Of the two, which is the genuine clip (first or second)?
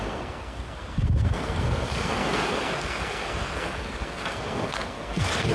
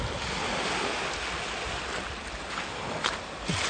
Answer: second